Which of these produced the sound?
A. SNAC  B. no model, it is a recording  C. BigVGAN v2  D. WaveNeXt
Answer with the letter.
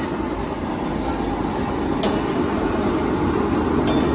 B